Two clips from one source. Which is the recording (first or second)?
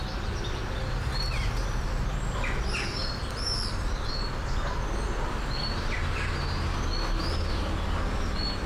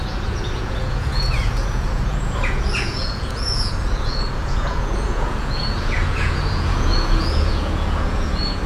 first